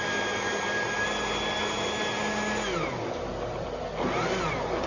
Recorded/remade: recorded